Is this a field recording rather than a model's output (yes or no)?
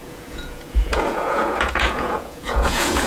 no